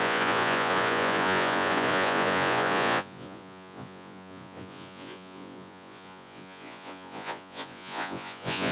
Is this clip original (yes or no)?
no